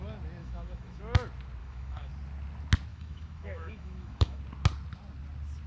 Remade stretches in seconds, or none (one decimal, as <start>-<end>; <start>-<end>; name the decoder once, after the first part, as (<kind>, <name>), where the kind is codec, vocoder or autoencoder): 0.4-1.0 (autoencoder, DAC-VAE); 1.6-2.1; 2.9-4.4